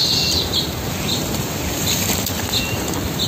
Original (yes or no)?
yes